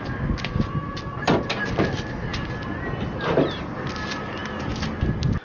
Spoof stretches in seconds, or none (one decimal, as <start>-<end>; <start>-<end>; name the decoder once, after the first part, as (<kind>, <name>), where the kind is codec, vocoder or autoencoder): none